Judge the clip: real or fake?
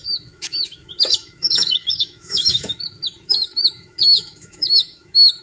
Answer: fake